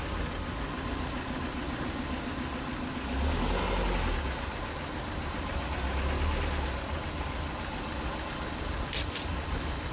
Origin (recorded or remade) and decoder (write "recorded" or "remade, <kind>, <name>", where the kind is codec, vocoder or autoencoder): recorded